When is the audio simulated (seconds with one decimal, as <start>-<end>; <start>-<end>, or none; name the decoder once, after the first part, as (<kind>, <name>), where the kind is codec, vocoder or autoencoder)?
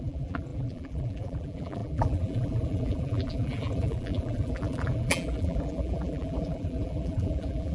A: 0.0-7.7 (vocoder, BigVGAN v2)